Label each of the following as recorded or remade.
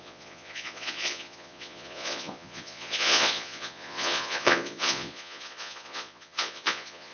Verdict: remade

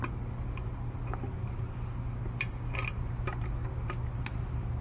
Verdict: recorded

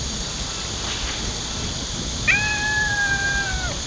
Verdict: recorded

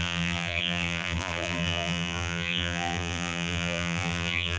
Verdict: remade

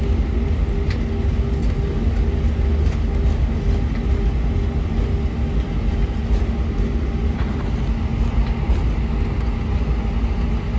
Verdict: recorded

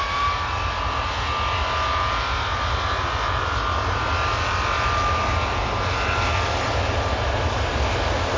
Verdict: recorded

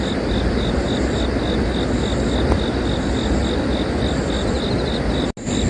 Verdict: recorded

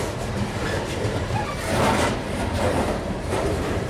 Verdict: remade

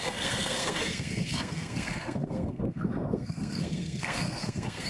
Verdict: remade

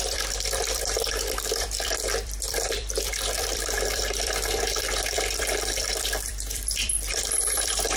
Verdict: remade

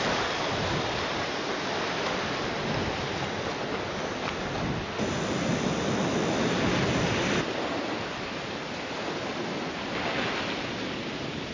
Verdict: recorded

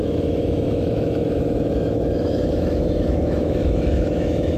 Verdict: remade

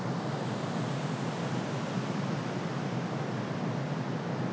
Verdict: recorded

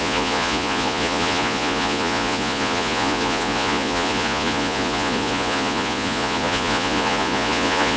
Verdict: remade